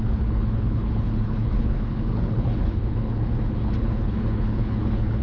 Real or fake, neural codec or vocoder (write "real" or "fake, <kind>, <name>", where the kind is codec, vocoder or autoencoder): fake, codec, HILCodec